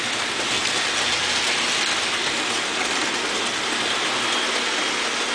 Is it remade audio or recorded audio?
recorded